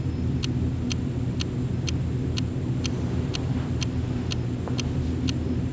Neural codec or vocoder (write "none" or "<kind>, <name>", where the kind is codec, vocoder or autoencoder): none